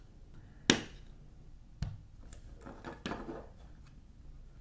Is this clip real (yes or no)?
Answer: yes